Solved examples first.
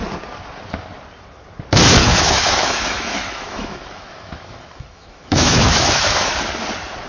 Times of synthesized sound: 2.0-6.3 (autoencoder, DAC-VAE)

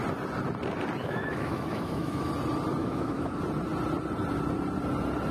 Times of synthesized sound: 1.0-2.3 (autoencoder, DAC-VAE); 2.8-3.4

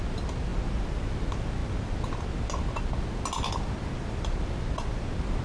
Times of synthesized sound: none

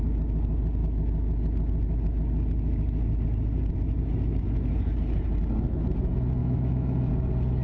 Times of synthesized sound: 6.4-7.1 (autoencoder, DAC-VAE)